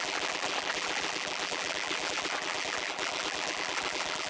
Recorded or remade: remade